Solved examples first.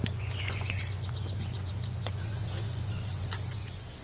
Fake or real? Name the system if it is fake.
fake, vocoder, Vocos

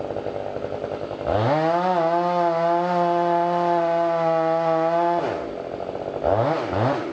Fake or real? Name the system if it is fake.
real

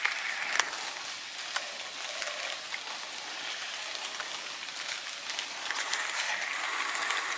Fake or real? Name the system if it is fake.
real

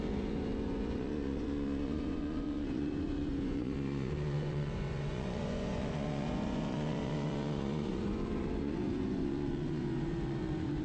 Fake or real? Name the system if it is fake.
fake, vocoder, Vocos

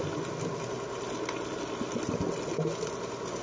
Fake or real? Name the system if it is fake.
real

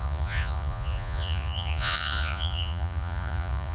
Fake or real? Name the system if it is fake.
fake, vocoder, Vocos